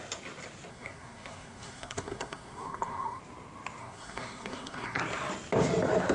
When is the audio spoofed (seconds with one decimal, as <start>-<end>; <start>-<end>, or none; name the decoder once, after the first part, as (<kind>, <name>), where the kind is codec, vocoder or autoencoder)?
0.7-3.2 (codec, SNAC); 3.8-5.0